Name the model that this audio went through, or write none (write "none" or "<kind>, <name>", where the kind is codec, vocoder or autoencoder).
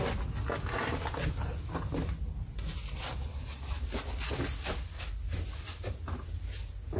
none